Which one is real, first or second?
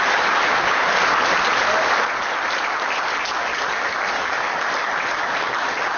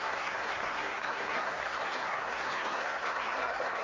first